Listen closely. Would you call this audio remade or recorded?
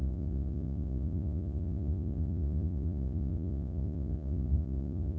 remade